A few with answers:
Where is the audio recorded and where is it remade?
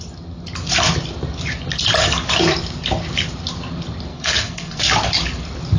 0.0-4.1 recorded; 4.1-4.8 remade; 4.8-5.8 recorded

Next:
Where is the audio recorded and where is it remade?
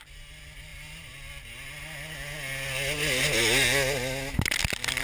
0.0-5.0 recorded